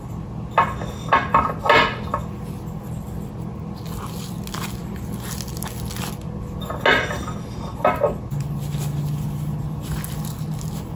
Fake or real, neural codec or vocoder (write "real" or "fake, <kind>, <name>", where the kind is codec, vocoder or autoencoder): real